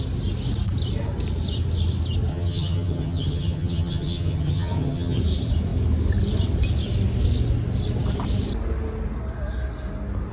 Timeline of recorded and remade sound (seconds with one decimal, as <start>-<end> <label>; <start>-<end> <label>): 0.0-2.3 recorded; 2.3-5.2 remade; 5.2-10.3 recorded